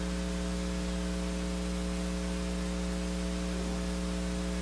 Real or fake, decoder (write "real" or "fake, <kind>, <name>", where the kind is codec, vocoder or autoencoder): real